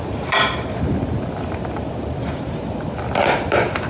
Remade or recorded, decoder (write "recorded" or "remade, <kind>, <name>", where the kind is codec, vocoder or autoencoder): remade, vocoder, BigVGAN v2